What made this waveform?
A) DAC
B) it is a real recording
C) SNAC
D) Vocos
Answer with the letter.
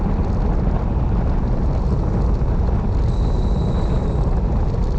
B